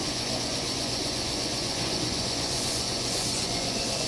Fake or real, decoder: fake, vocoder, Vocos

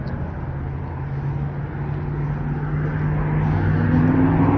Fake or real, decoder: real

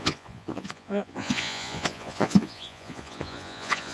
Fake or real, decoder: fake, vocoder, Vocos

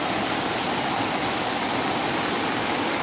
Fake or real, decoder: real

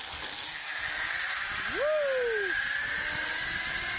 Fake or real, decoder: real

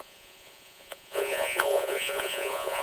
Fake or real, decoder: fake, vocoder, Vocos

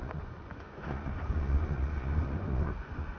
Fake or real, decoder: fake, vocoder, Vocos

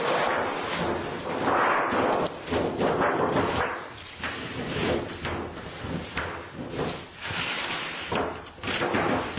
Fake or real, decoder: real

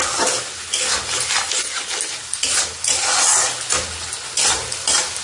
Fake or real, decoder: real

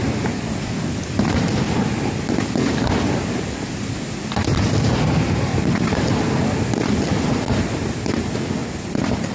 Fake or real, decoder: real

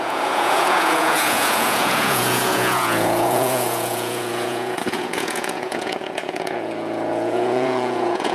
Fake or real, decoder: fake, vocoder, Vocos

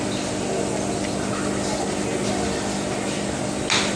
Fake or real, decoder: real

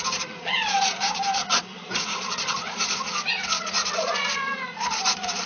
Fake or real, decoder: fake, vocoder, Vocos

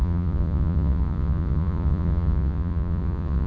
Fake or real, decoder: fake, vocoder, Vocos